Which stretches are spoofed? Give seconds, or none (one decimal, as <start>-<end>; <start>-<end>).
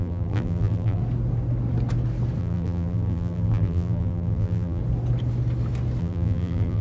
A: 0.0-1.0; 2.4-4.8; 6.0-6.8